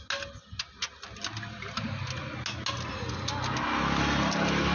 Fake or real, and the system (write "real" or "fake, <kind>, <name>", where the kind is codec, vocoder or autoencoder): real